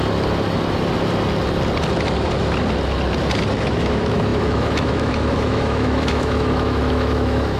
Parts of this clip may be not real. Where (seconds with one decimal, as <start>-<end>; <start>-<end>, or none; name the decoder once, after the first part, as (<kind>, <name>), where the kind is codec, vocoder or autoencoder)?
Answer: 3.6-7.6 (autoencoder, DAC-VAE)